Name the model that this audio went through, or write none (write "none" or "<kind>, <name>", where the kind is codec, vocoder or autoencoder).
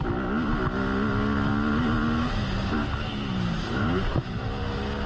none